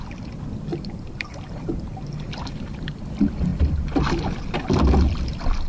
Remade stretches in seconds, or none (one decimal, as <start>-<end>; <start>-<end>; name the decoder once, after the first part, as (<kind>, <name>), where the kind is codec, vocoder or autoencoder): 0.7-3.0 (vocoder, BigVGAN v2)